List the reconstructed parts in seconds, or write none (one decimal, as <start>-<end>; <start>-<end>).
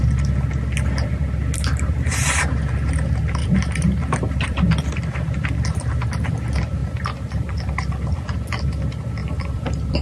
3.4-5.0; 9.2-10.0